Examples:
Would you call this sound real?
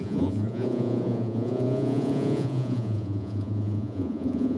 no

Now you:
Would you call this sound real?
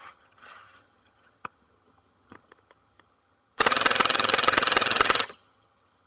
no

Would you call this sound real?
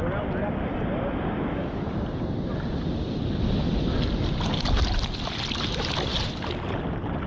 yes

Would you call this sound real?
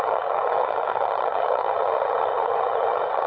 no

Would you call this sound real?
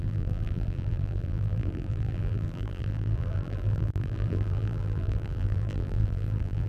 no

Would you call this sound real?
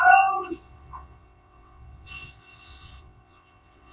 no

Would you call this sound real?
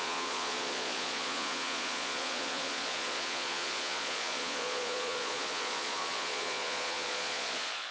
no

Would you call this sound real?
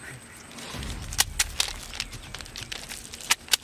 yes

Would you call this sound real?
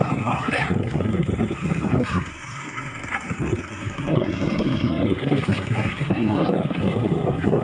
no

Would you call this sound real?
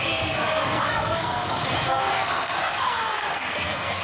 no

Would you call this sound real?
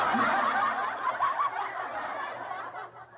yes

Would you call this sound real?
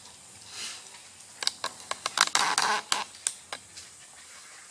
yes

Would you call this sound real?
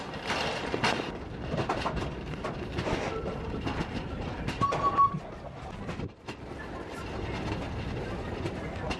yes